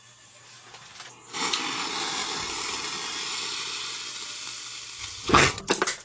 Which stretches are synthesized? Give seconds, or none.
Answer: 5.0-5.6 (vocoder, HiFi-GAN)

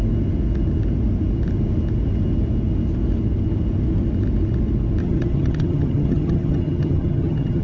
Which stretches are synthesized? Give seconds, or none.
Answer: 5.0-7.6 (vocoder, HiFi-GAN)

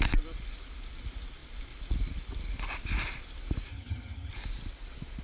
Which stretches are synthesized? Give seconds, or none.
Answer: 3.7-4.3 (vocoder, HiFi-GAN)

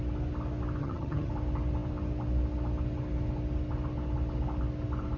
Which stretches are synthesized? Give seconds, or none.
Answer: 0.8-1.3 (vocoder, HiFi-GAN)

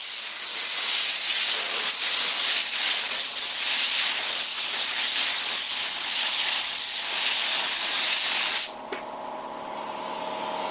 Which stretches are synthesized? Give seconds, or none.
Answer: none

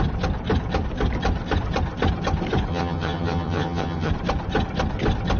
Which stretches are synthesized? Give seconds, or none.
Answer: 2.7-4.1 (vocoder, HiFi-GAN)